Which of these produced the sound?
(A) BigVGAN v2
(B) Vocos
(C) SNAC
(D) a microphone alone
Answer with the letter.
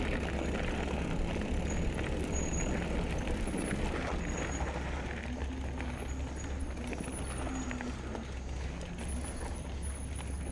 D